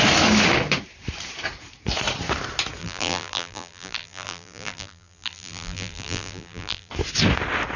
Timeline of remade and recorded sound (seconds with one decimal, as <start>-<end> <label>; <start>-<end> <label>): 0.0-2.8 recorded; 2.8-6.9 remade; 6.9-7.8 recorded

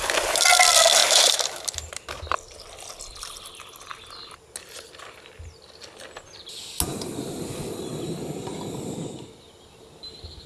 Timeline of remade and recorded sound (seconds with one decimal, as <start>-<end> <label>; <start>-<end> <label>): 0.0-1.0 recorded; 1.0-2.1 remade; 2.1-10.5 recorded

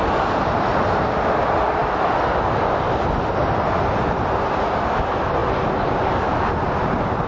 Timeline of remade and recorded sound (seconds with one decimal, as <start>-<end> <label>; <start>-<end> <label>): 0.0-7.3 recorded

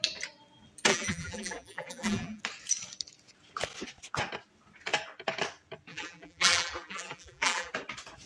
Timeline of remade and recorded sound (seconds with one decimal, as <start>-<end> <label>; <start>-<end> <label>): 0.0-0.9 recorded; 0.9-2.4 remade; 2.4-5.9 recorded; 5.9-7.7 remade; 7.7-8.3 recorded

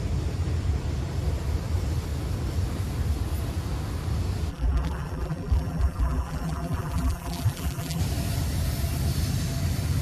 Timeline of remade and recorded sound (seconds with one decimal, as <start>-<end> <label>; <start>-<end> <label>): 0.0-4.5 recorded; 4.5-8.0 remade; 8.0-10.0 recorded

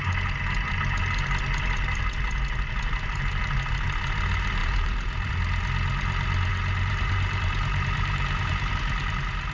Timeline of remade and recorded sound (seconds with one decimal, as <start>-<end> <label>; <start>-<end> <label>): 0.0-4.6 recorded; 4.6-5.3 remade; 5.3-6.5 recorded; 6.5-8.7 remade; 8.7-9.5 recorded

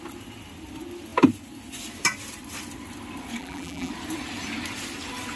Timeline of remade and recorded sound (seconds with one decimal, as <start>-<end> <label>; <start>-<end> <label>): 0.0-3.4 recorded; 3.4-3.9 remade; 3.9-5.4 recorded

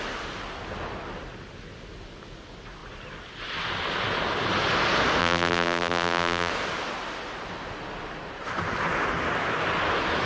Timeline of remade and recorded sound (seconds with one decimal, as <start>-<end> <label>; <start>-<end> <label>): 0.0-5.2 recorded; 5.2-6.5 remade; 6.5-10.3 recorded